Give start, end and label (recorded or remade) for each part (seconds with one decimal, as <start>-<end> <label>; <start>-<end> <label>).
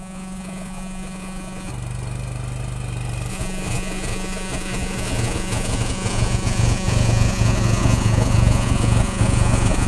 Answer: 0.0-1.7 remade; 1.7-3.3 recorded; 3.3-9.9 remade